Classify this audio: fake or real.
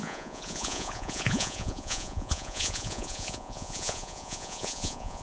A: fake